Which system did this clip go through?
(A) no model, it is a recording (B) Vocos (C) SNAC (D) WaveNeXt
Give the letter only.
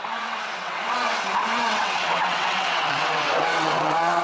D